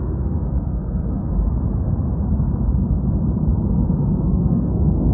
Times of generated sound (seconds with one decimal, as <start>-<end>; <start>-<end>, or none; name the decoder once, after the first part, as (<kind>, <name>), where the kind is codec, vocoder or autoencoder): 0.0-1.2 (codec, SNAC); 4.3-5.1